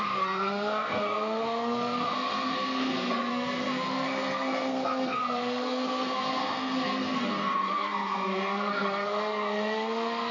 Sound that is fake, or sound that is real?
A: fake